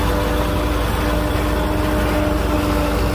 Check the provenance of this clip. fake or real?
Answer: real